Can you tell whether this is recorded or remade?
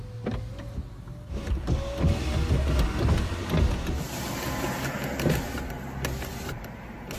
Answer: recorded